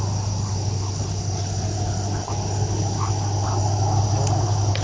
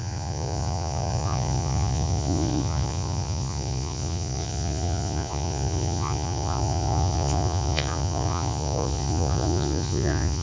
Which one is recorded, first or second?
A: first